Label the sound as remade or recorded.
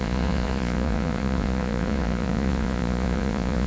remade